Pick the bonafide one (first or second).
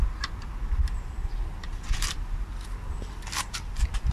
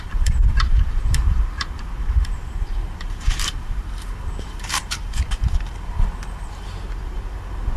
first